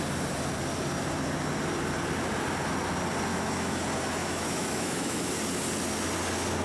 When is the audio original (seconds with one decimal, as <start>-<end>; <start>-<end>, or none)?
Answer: 0.0-3.3; 3.8-4.2; 5.3-6.6